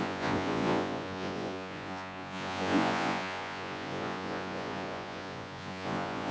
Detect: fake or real fake